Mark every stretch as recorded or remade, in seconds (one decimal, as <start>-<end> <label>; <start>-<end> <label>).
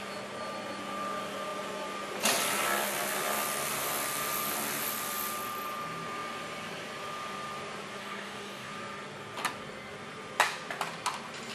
0.0-8.0 recorded; 8.0-8.7 remade; 8.7-11.5 recorded